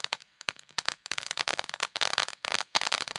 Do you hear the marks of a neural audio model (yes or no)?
yes